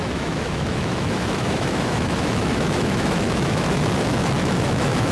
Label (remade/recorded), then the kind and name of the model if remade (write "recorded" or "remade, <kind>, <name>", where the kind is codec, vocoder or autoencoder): remade, autoencoder, DAC-VAE